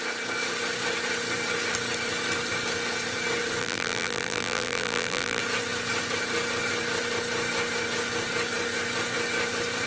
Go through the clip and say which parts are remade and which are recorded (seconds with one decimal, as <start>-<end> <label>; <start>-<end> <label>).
0.0-3.6 recorded; 3.6-5.4 remade; 5.4-9.9 recorded